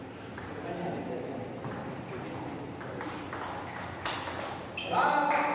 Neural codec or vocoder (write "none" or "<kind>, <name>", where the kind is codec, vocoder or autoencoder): none